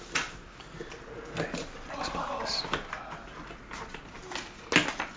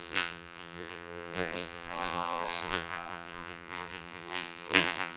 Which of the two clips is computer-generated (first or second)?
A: second